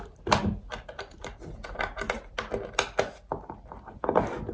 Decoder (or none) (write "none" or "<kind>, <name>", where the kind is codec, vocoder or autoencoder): none